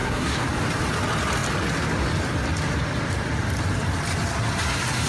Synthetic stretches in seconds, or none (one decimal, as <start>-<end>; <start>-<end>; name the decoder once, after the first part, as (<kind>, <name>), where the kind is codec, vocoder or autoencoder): 0.0-0.5 (codec, SNAC)